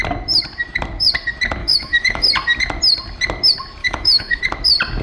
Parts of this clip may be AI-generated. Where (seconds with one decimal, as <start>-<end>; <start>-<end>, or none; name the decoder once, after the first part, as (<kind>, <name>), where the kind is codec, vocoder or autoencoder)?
1.6-2.2 (autoencoder, DAC-VAE); 3.8-4.4